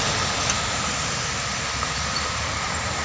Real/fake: fake